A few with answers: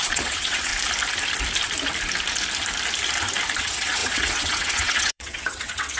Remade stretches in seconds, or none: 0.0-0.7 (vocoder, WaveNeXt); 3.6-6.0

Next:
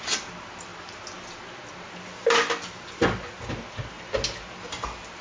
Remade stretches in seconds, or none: none

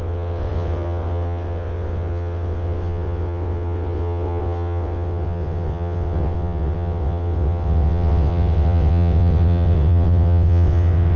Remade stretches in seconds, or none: 0.0-11.2 (vocoder, WaveNeXt)

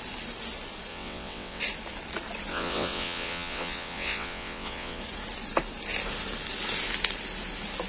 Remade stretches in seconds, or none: 0.9-1.6 (vocoder, WaveNeXt); 2.5-5.0

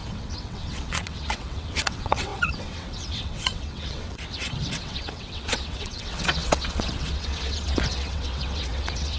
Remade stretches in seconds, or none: 0.0-9.2 (vocoder, WaveNeXt)